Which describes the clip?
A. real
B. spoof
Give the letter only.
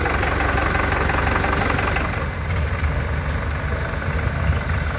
A